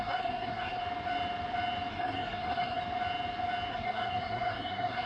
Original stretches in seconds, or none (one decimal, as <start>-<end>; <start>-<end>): 0.8-1.9; 2.8-3.7